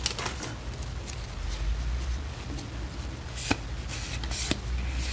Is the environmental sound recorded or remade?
recorded